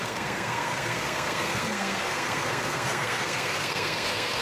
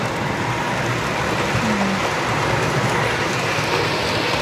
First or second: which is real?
second